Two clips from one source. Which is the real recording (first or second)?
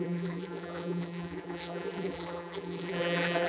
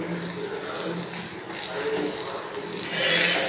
second